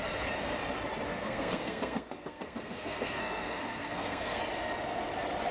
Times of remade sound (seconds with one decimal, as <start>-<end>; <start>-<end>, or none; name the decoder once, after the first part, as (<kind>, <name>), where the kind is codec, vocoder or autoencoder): 1.1-4.4 (codec, SNAC)